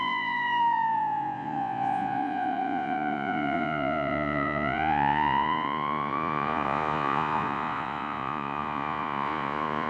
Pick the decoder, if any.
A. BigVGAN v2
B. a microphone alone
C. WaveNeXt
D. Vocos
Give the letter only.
D